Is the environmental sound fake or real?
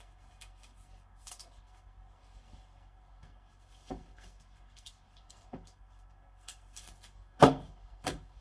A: fake